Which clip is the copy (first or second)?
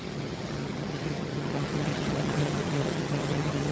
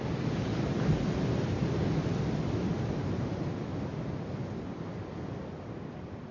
first